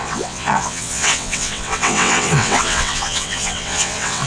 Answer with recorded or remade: remade